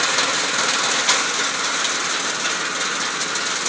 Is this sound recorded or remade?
recorded